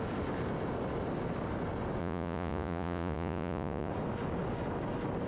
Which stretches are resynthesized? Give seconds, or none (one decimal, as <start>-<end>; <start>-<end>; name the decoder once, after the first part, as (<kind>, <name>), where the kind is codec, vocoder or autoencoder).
2.0-3.9 (vocoder, Vocos)